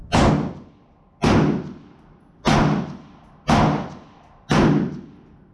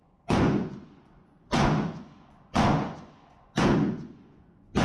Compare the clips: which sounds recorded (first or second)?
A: first